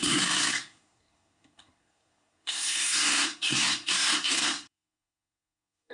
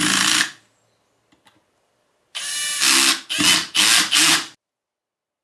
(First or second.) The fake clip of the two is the first